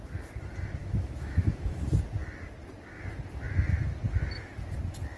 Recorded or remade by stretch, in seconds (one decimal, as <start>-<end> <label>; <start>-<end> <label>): 0.0-0.8 recorded; 0.8-1.8 remade; 1.8-5.2 recorded

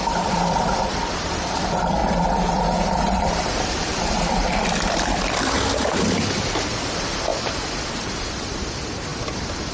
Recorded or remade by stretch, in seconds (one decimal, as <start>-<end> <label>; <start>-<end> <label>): 0.0-2.0 remade; 2.0-3.0 recorded; 3.0-7.3 remade; 7.3-7.9 recorded; 7.9-9.1 remade; 9.1-9.7 recorded

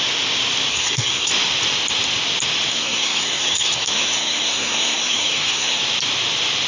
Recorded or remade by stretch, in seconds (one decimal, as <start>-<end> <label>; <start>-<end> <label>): 0.0-0.7 recorded; 0.7-1.3 remade; 1.3-2.7 recorded; 2.7-5.8 remade; 5.8-6.7 recorded

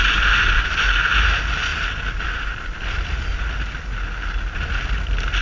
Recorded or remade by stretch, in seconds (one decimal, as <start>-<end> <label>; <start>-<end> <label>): 0.0-5.4 recorded

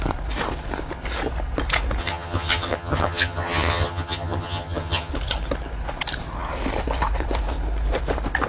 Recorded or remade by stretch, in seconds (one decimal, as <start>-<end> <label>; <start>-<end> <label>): 0.0-2.0 recorded; 2.0-5.1 remade; 5.1-8.5 recorded

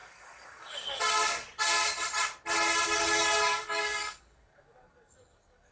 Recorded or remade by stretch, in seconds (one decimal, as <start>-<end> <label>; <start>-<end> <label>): 0.0-1.0 remade; 1.0-3.5 recorded; 3.5-5.7 remade

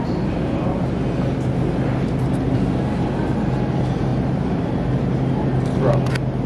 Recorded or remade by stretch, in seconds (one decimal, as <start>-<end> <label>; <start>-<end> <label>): 0.0-4.1 recorded; 4.1-5.9 remade; 5.9-6.5 recorded

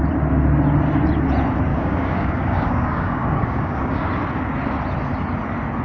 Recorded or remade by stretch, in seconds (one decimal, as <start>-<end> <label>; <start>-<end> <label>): 0.0-1.7 recorded; 1.7-4.1 remade; 4.1-5.8 recorded